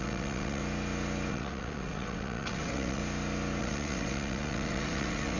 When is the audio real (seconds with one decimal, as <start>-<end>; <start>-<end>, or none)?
0.6-1.3; 3.0-3.6